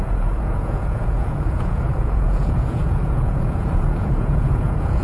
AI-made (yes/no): yes